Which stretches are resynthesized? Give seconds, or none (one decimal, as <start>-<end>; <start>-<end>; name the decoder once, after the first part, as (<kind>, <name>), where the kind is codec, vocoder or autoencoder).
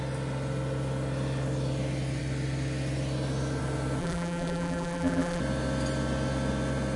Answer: 4.0-5.4 (vocoder, BigVGAN v2)